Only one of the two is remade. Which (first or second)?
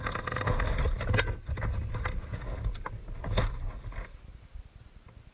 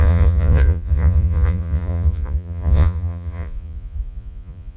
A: second